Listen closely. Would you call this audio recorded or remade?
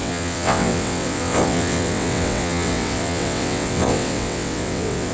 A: remade